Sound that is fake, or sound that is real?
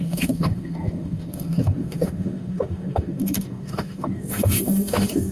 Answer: fake